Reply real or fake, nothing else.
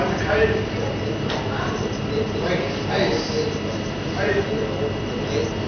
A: real